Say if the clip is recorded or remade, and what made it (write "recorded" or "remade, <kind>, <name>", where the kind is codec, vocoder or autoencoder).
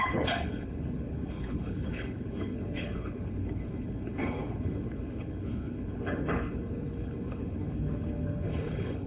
remade, codec, HILCodec